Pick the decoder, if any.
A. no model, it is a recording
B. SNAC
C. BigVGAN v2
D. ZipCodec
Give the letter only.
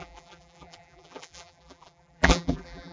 C